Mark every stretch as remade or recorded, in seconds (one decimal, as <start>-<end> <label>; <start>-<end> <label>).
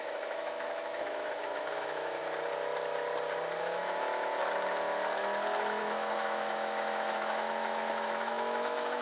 0.0-2.2 remade; 2.2-3.6 recorded; 3.6-4.4 remade; 4.4-5.8 recorded; 5.8-9.0 remade